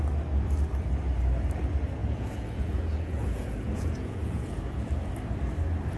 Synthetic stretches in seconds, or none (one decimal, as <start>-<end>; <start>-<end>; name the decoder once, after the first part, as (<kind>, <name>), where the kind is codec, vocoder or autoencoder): 2.0-5.1 (vocoder, Vocos)